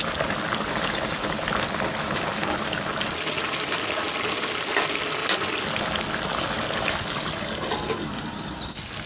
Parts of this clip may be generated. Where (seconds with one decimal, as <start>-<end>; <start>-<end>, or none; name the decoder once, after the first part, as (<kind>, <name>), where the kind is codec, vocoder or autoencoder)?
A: none